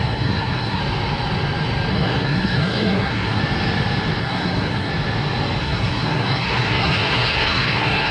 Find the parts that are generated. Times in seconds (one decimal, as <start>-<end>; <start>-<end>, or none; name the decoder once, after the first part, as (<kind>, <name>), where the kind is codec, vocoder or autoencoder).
0.0-0.8 (codec, SNAC); 1.9-3.4; 4.2-4.9; 5.6-8.1